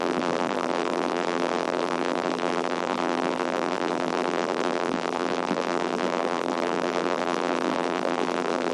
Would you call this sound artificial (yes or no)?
yes